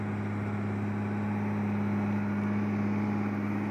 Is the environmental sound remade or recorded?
recorded